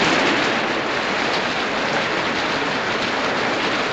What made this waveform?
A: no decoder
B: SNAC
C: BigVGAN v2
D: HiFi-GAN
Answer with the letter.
A